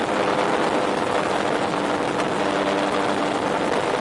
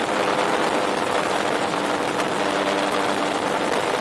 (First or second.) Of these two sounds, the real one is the first